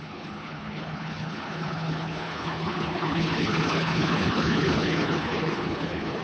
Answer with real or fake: fake